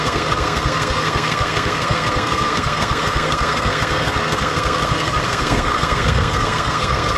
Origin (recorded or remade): remade